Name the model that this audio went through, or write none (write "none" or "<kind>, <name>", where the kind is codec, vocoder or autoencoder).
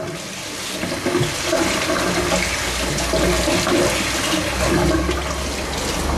none